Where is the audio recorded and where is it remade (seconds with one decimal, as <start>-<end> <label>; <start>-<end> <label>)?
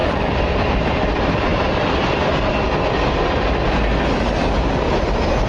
0.0-0.8 remade; 0.8-5.5 recorded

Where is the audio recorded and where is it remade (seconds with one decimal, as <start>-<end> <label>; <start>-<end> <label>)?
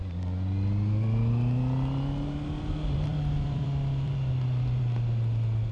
0.0-3.1 recorded; 3.1-4.8 remade; 4.8-5.7 recorded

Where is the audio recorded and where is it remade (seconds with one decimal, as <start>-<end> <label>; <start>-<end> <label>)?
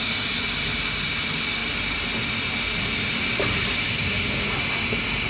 0.0-5.3 recorded